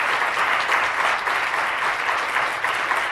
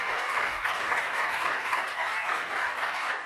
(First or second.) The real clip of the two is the first